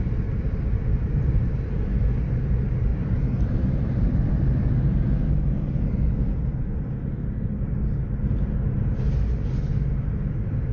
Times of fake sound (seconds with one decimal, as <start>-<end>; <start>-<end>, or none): 0.9-1.7; 2.9-4.3

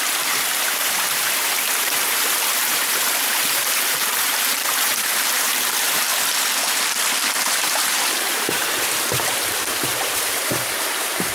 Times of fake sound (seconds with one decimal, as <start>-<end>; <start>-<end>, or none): 0.0-6.1; 7.2-11.3

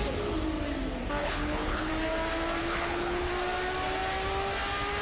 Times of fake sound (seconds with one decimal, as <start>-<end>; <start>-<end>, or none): 1.2-1.9; 2.6-3.3